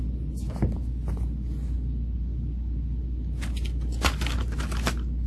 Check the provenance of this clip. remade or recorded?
recorded